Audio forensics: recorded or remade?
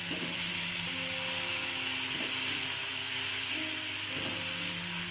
recorded